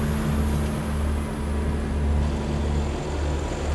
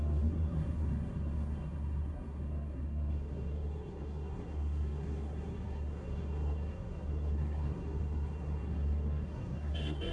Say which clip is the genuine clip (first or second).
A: first